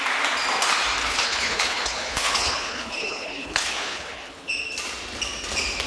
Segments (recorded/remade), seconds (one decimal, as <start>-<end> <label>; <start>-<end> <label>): 0.0-1.0 recorded; 1.0-4.5 remade; 4.5-5.9 recorded